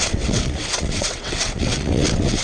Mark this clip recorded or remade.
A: remade